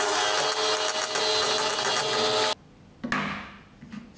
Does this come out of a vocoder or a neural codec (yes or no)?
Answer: no